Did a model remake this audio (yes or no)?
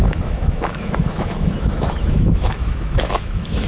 yes